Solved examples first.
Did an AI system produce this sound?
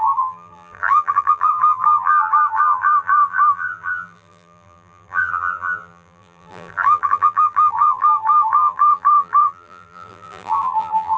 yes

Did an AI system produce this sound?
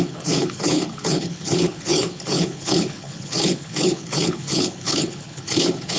yes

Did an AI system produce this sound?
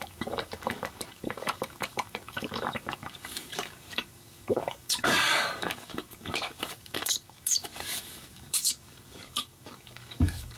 yes